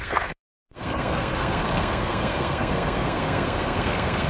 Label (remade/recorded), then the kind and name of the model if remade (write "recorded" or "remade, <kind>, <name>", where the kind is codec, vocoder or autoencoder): remade, codec, SNAC